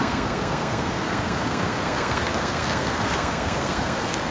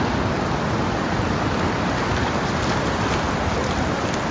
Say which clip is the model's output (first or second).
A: first